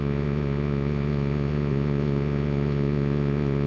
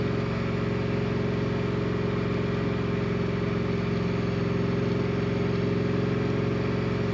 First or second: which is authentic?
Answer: second